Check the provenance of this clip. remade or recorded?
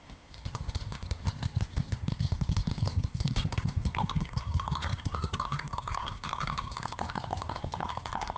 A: remade